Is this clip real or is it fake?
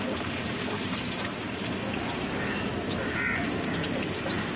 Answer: fake